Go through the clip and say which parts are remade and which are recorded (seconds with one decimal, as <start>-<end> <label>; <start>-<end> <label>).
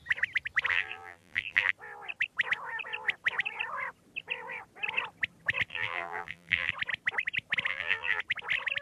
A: 0.0-0.7 recorded; 0.7-1.7 remade; 1.7-5.7 recorded; 5.7-6.7 remade; 6.7-7.7 recorded; 7.7-8.2 remade; 8.2-8.8 recorded